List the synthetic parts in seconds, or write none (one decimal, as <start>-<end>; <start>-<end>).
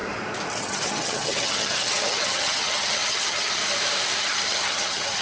0.6-3.6; 4.2-5.2